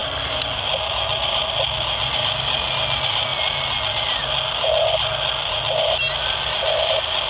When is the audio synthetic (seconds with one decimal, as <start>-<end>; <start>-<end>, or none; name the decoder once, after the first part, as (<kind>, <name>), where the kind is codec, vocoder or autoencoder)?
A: none